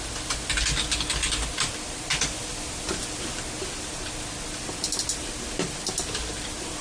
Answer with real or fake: real